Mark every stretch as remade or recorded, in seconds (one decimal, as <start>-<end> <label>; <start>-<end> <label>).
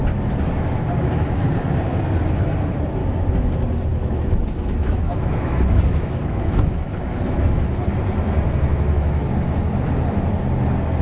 0.0-3.0 recorded; 3.0-3.5 remade; 3.5-3.9 recorded; 3.9-7.2 remade; 7.2-8.7 recorded; 8.7-9.2 remade; 9.2-11.0 recorded